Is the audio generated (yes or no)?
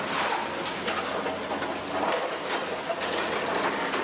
no